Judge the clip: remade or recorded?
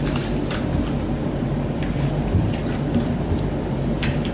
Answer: remade